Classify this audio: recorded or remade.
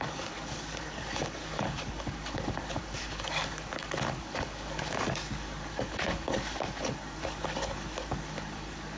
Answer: remade